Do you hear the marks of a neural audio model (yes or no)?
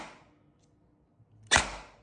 no